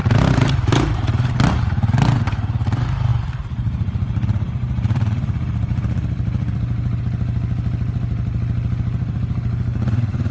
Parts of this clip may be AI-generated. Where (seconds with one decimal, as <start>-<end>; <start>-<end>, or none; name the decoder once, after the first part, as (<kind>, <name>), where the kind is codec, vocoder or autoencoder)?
0.0-1.3 (vocoder, BigVGAN v2); 3.1-7.0